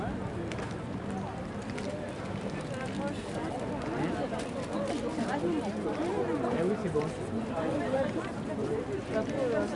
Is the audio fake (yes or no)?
no